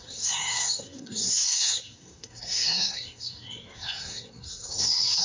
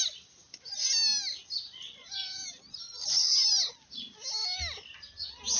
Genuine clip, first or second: second